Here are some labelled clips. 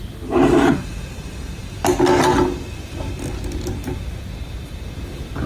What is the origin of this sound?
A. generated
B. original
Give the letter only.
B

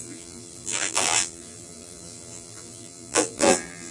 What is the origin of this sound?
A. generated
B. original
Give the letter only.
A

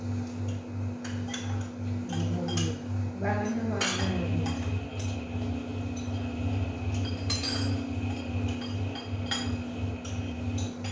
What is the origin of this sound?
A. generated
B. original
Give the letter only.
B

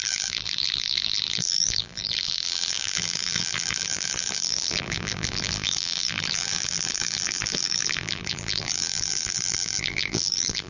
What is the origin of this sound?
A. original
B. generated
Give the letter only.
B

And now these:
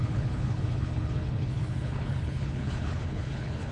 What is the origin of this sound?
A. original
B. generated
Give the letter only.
B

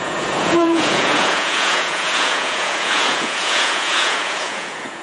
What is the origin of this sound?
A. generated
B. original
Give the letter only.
A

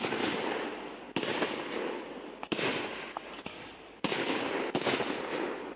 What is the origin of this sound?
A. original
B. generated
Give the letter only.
A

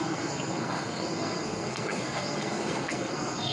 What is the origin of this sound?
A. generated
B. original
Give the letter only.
A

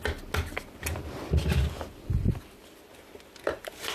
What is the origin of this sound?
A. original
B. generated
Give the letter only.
A